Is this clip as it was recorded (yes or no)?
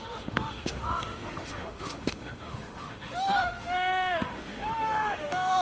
no